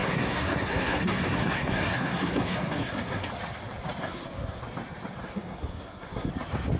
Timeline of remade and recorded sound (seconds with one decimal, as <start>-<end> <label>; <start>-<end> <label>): 0.0-3.3 remade; 3.3-4.0 recorded; 4.0-4.6 remade; 4.6-5.2 recorded; 5.2-6.3 remade; 6.3-6.8 recorded